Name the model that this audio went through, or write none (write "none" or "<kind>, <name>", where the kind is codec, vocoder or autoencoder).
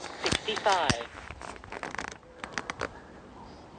none